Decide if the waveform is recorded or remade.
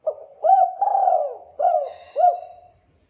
remade